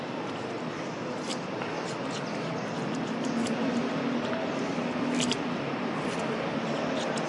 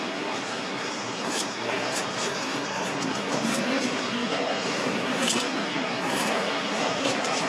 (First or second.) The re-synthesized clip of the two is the second